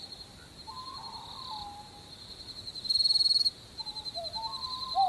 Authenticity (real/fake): real